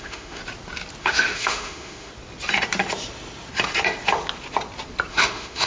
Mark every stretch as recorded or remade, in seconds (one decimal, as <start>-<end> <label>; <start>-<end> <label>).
0.0-0.4 remade; 0.4-1.0 recorded; 1.0-2.1 remade; 2.1-5.1 recorded; 5.1-5.7 remade